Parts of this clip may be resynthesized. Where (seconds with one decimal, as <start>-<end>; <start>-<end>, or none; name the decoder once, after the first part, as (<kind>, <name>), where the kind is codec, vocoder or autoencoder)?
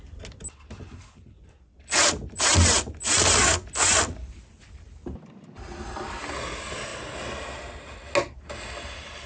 none